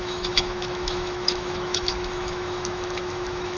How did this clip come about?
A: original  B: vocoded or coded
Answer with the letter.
B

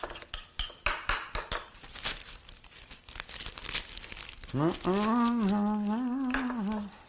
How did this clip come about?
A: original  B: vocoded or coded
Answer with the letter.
A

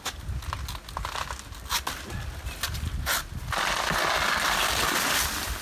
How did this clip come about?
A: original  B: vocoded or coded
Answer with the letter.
A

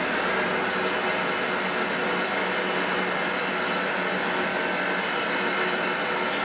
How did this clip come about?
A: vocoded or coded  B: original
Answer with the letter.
B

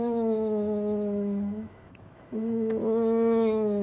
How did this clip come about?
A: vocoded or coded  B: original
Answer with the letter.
A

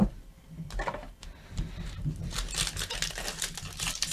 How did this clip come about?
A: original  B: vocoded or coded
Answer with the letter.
A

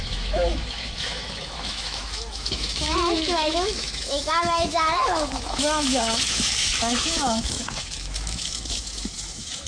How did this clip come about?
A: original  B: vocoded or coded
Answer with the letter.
B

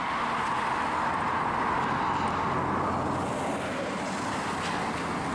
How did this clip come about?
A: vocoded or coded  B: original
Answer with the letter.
B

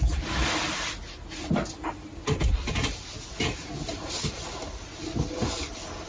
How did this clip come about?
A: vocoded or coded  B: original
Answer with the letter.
B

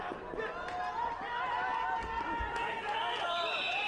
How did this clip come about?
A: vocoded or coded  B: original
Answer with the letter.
B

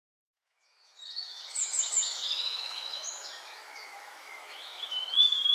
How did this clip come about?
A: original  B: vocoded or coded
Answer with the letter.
B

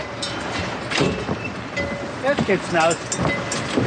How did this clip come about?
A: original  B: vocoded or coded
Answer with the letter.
A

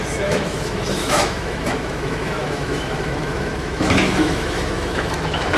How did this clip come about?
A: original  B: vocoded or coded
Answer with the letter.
B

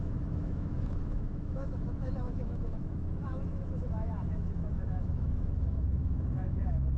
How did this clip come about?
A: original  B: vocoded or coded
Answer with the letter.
B